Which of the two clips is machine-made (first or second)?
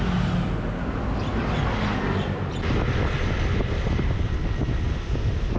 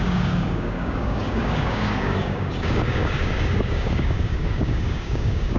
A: second